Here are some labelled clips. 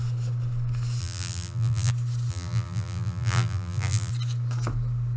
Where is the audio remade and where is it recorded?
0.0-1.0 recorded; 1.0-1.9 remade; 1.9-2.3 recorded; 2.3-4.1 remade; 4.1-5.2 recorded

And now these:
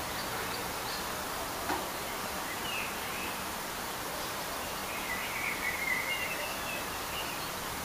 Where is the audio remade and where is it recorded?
0.0-0.6 remade; 0.6-1.7 recorded; 1.7-4.8 remade; 4.8-6.8 recorded; 6.8-7.8 remade

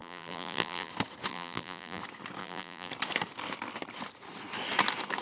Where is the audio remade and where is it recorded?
0.0-0.9 remade; 0.9-1.3 recorded; 1.3-2.0 remade; 2.0-2.4 recorded; 2.4-2.9 remade; 2.9-5.2 recorded

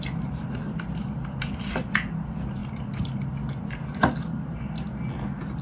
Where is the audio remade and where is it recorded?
0.0-5.6 recorded

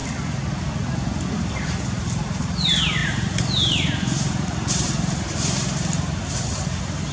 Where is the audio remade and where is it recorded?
0.0-1.3 recorded; 1.3-7.1 remade

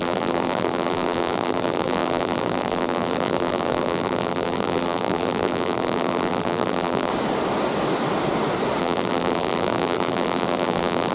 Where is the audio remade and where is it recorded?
0.0-7.1 remade; 7.1-8.8 recorded; 8.8-11.1 remade

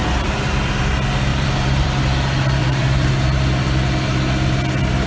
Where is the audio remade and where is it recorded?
0.0-0.8 remade; 0.8-1.3 recorded; 1.3-2.0 remade; 2.0-2.6 recorded; 2.6-3.1 remade; 3.1-5.1 recorded